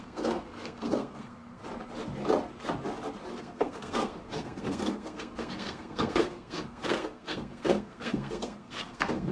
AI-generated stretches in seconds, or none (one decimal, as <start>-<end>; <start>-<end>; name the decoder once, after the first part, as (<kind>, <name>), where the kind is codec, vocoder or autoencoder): 0.0-1.6 (codec, SNAC); 3.4-9.3